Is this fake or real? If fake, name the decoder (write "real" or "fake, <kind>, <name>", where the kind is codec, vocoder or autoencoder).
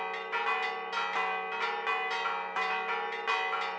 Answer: real